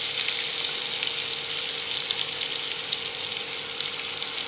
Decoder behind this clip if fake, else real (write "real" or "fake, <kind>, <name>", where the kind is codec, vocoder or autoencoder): real